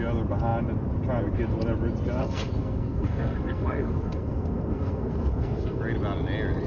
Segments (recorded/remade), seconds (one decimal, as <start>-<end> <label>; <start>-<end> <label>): 0.0-2.2 recorded; 2.2-5.8 remade; 5.8-6.7 recorded